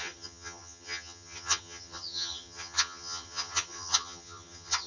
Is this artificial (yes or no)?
yes